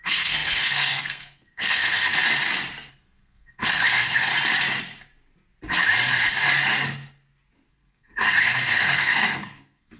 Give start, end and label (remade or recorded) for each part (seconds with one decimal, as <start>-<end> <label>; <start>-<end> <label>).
0.0-2.1 remade; 2.1-2.9 recorded; 2.9-4.3 remade; 4.3-7.7 recorded; 7.7-10.0 remade